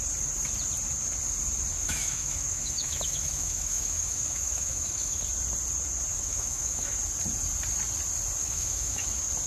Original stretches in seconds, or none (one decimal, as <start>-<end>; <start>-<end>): 0.0-1.7; 5.2-6.1; 6.9-8.4; 9.1-9.5